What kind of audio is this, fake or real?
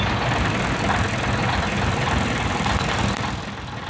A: real